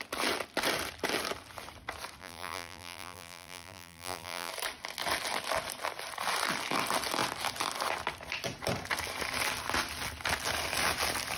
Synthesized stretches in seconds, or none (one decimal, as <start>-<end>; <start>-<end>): 2.2-4.5